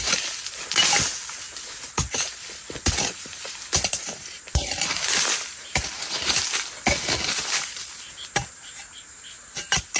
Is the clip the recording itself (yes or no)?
yes